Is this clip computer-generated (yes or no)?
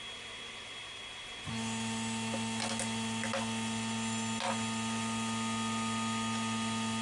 no